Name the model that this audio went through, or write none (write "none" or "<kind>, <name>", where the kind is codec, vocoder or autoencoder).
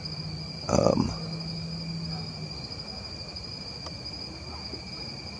none